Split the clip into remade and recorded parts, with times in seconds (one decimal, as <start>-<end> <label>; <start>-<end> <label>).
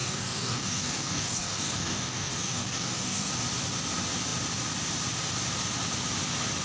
0.0-3.3 remade; 3.3-6.6 recorded